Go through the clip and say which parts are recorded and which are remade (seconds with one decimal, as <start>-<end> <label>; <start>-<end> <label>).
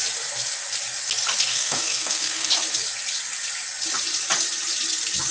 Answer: 0.0-1.5 recorded; 1.5-2.5 remade; 2.5-5.3 recorded